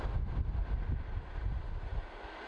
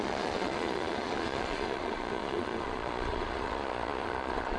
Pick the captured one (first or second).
first